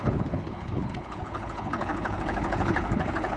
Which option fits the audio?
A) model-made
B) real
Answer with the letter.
A